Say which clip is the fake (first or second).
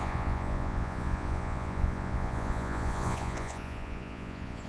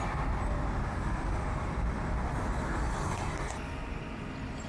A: first